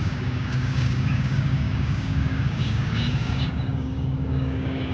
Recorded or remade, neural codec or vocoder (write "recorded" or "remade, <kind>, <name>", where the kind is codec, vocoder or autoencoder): remade, codec, DAC